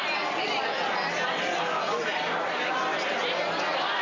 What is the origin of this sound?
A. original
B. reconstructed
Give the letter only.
A